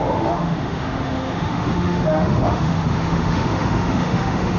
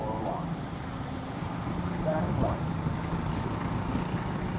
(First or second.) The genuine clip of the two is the second